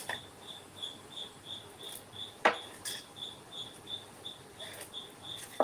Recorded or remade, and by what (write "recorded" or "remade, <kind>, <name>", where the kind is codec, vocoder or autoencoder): recorded